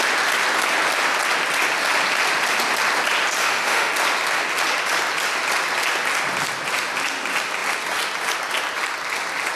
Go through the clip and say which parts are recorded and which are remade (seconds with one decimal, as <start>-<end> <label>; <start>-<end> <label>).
0.0-3.4 recorded; 3.4-3.9 remade; 3.9-9.6 recorded